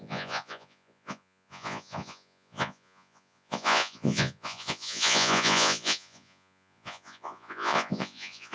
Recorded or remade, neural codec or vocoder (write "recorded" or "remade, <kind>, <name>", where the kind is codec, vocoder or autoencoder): remade, vocoder, Vocos